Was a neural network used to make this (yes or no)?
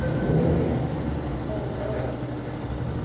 no